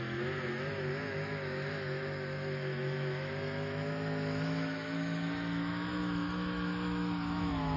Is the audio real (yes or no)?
no